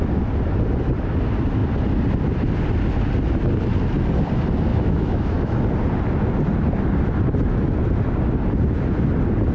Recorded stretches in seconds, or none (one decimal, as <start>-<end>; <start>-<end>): 0.0-4.7; 5.6-9.5